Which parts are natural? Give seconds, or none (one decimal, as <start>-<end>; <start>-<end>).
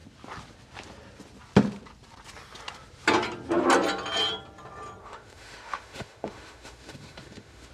0.0-5.0